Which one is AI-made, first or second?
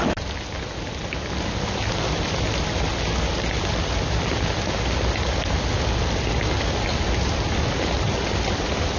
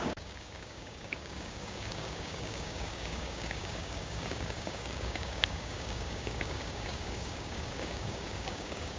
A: second